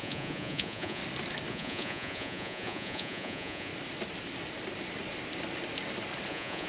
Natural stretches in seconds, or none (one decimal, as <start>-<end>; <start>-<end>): 1.0-1.5; 3.7-6.3